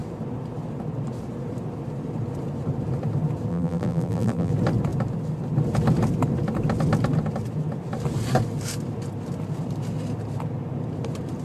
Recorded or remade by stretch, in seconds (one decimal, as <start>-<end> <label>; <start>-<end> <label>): 0.0-3.5 recorded; 3.5-4.5 remade; 4.5-11.4 recorded